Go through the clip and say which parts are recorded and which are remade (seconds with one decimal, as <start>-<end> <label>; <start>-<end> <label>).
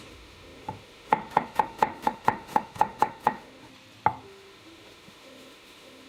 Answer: 0.0-3.7 remade; 3.7-4.2 recorded; 4.2-6.1 remade